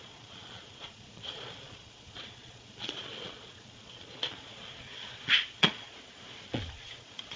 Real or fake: fake